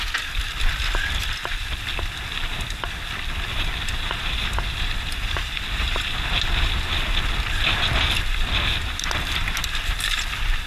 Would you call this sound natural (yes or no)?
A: yes